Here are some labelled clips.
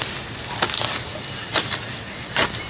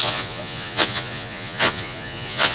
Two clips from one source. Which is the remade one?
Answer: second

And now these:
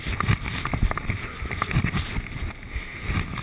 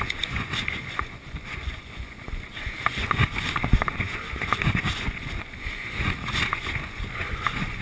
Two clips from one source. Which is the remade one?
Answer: second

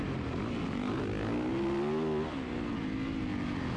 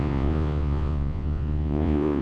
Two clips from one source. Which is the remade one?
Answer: second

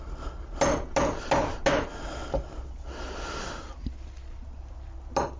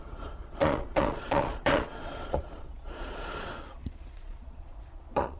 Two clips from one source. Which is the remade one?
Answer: second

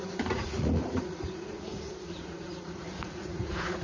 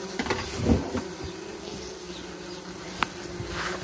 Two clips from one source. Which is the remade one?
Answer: first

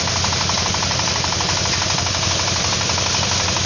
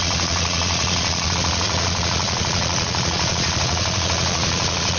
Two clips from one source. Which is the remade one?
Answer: second